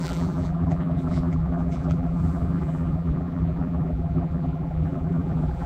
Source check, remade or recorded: remade